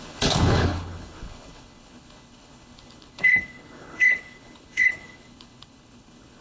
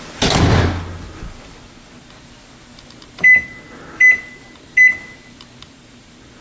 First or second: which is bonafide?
second